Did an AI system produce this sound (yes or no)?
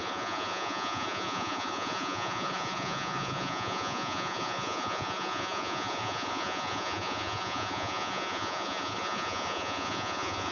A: yes